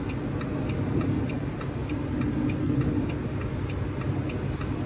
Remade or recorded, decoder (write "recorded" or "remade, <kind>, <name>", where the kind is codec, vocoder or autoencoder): recorded